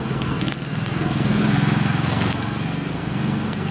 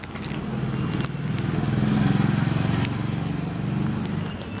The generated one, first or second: first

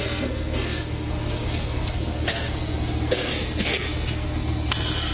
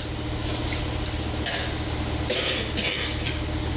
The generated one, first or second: first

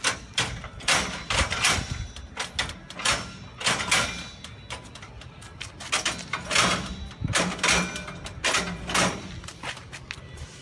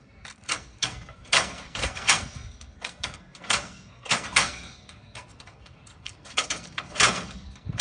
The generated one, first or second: second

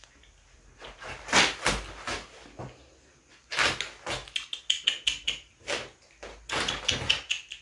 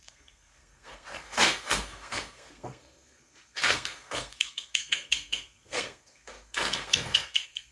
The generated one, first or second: second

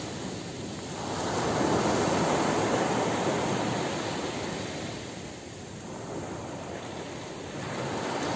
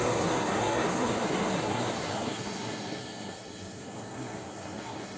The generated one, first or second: second